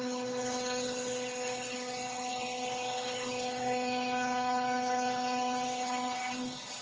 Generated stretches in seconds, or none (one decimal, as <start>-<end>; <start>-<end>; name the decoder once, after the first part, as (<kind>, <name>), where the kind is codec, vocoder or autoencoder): 0.0-6.8 (codec, HILCodec)